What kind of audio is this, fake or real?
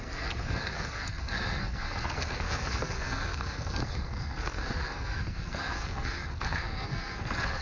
fake